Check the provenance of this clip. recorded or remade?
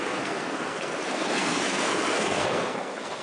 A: remade